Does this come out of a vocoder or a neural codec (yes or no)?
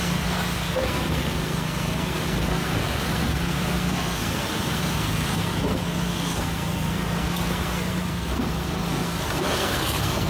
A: yes